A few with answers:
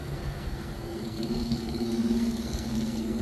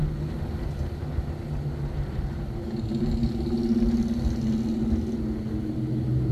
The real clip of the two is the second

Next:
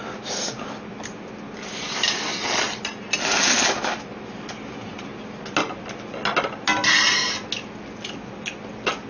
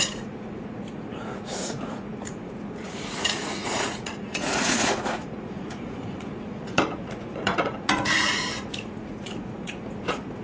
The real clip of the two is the first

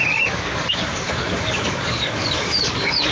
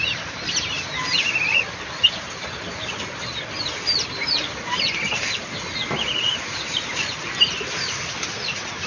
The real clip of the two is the second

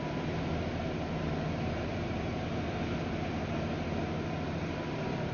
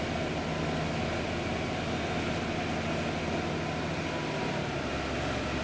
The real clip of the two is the second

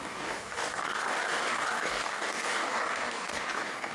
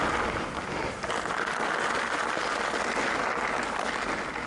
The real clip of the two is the second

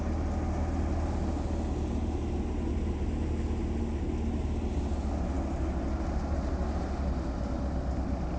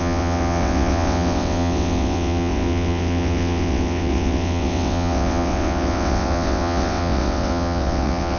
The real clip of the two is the first